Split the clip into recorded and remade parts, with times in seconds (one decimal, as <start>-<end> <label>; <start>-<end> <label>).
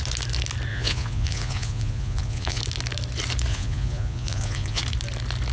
0.0-0.7 recorded; 0.7-2.6 remade; 2.6-3.5 recorded; 3.5-4.8 remade; 4.8-5.5 recorded